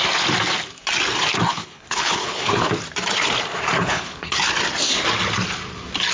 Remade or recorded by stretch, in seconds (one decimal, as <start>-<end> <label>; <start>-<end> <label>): 0.0-1.6 recorded; 1.6-2.7 remade; 2.7-3.8 recorded; 3.8-4.4 remade; 4.4-6.1 recorded